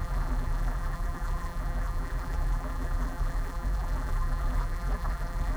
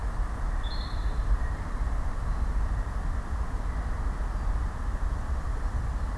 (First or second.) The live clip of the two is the second